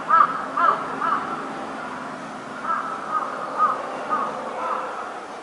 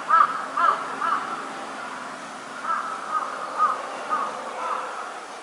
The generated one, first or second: second